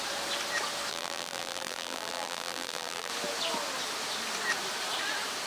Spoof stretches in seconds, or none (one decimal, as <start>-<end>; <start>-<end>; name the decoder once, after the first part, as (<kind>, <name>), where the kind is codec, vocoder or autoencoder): 0.9-3.1 (vocoder, BigVGAN v2)